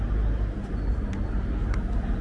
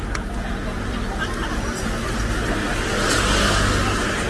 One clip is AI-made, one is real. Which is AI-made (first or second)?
first